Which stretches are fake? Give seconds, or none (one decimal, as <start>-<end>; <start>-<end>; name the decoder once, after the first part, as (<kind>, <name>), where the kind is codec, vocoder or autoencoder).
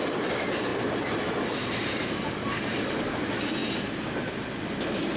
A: none